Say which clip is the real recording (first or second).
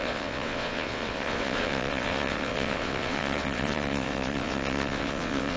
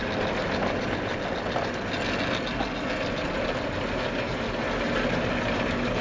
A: second